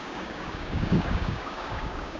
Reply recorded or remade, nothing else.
remade